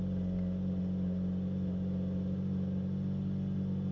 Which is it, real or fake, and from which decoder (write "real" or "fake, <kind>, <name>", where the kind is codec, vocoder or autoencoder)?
real